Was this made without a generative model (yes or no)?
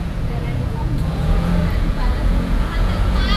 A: no